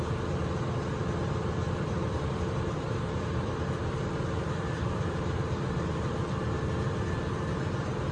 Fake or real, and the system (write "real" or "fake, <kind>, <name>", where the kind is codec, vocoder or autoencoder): fake, vocoder, BigVGAN v2